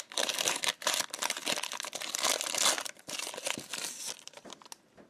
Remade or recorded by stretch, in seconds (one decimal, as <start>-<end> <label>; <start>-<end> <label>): 0.0-5.1 recorded